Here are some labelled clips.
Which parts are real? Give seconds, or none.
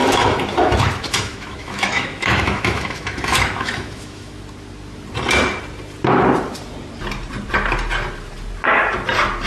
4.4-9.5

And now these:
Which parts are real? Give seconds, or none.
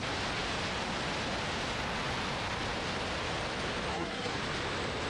0.0-3.9; 4.4-5.1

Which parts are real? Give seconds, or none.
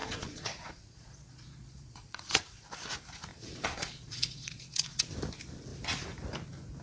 2.7-3.3; 5.1-6.8